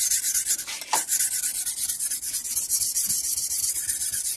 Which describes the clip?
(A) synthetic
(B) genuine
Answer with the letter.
B